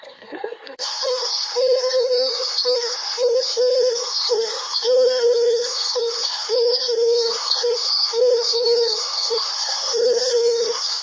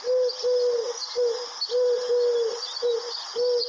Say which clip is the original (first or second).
second